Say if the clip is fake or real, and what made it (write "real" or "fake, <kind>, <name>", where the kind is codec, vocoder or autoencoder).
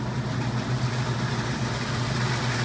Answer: real